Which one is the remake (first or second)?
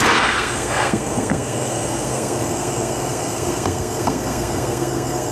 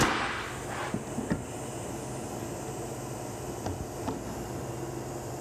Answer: first